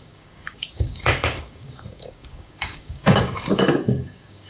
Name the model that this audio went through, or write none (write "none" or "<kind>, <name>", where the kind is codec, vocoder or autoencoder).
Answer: codec, DAC